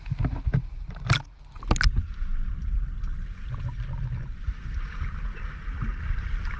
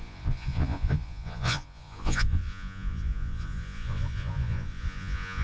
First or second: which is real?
first